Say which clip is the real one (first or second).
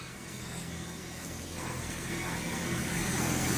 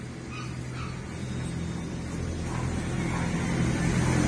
second